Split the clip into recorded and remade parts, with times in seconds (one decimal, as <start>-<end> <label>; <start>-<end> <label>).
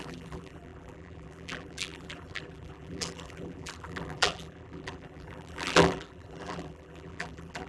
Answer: 0.0-7.7 remade